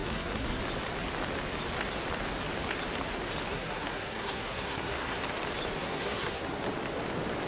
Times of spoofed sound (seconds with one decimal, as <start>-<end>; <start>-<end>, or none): 0.0-0.6; 3.5-5.2; 5.8-6.6

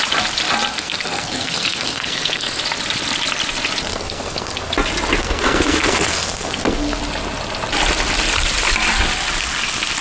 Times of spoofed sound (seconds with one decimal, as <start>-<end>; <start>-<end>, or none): 0.7-2.6; 3.9-4.7; 5.2-7.0